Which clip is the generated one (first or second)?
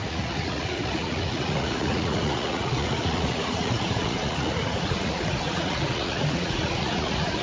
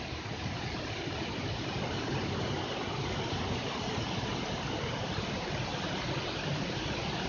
first